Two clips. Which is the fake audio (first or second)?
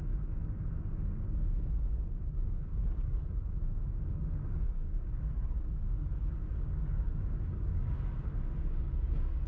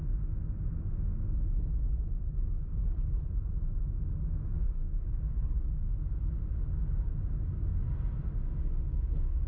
first